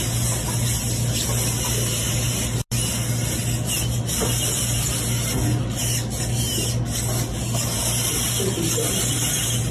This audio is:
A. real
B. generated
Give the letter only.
A